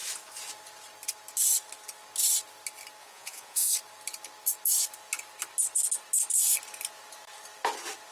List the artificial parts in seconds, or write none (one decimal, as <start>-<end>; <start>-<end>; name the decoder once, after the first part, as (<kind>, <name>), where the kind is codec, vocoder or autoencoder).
3.0-3.7 (vocoder, Vocos)